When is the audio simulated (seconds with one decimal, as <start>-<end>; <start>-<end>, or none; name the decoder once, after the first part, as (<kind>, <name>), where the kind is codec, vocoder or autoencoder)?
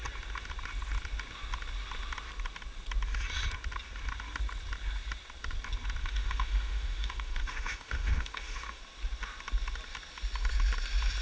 6.0-8.8 (autoencoder, DAC-VAE)